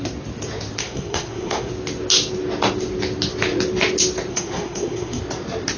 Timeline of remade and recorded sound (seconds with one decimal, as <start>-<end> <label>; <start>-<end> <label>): 0.0-0.8 recorded; 0.8-1.7 remade; 1.7-4.3 recorded; 4.3-5.2 remade; 5.2-5.8 recorded